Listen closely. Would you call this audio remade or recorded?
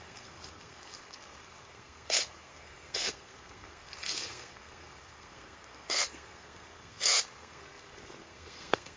remade